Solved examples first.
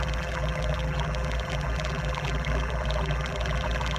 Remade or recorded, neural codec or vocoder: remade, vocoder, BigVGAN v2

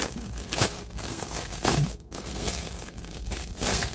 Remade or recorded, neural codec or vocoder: remade, codec, SNAC